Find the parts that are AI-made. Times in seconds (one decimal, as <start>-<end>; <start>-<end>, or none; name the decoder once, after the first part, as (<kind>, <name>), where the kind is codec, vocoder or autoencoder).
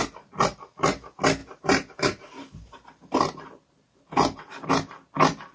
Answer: 1.4-4.7 (vocoder, BigVGAN v2)